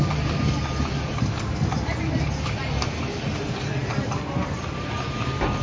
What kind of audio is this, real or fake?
real